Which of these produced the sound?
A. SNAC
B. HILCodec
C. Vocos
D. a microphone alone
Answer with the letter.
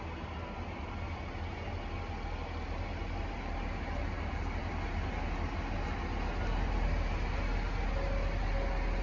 D